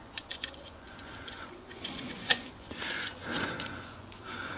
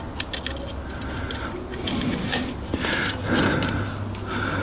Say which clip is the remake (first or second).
first